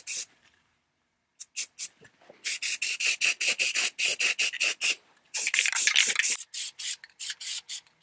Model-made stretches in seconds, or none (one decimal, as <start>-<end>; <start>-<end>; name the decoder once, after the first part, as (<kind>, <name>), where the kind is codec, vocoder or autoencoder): none